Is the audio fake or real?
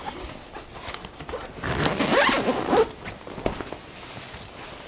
real